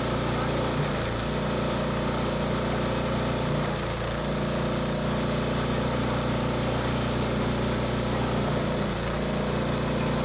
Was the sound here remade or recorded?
recorded